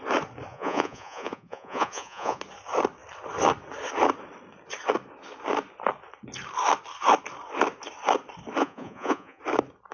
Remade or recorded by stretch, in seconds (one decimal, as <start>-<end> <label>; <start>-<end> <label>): 0.0-0.5 recorded; 0.5-2.4 remade; 2.4-8.6 recorded; 8.6-9.4 remade; 9.4-9.9 recorded